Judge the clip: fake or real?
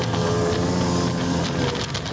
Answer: real